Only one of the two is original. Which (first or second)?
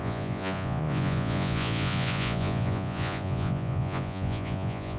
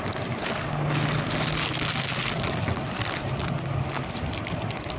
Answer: second